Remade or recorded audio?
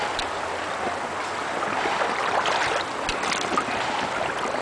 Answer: recorded